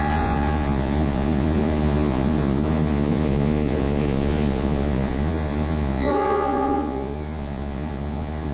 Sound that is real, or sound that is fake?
fake